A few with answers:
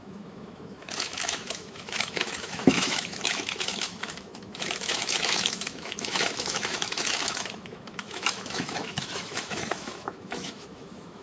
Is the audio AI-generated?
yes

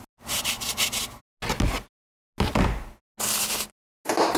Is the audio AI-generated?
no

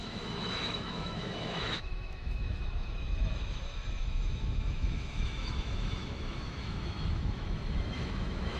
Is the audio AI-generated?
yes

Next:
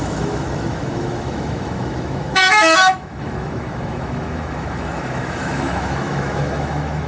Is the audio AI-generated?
yes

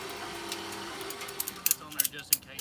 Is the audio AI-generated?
no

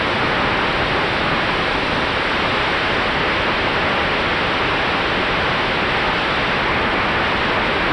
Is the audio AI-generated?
no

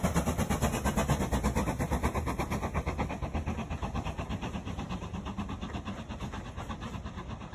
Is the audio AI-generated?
no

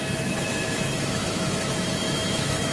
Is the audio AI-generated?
yes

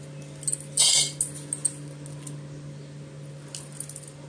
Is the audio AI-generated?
no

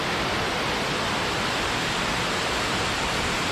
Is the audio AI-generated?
no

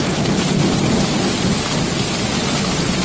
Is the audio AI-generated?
no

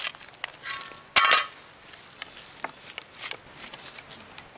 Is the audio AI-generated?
no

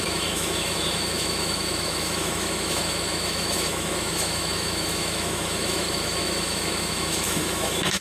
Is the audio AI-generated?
yes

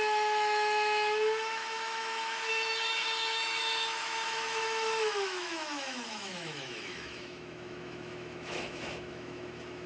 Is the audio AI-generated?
yes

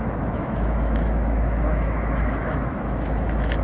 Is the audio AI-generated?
yes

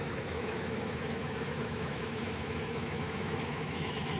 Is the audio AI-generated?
yes